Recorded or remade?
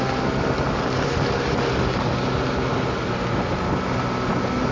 recorded